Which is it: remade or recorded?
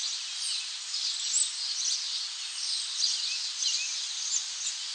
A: recorded